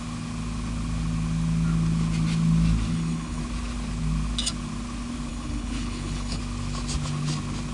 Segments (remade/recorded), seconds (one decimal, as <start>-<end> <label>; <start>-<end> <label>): 0.0-2.9 recorded; 2.9-3.4 remade; 3.4-5.3 recorded; 5.3-6.4 remade; 6.4-7.7 recorded